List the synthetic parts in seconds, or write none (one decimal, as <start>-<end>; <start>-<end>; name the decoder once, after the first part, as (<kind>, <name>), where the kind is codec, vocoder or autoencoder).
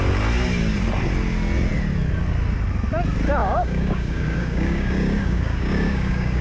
3.4-6.4 (codec, DAC)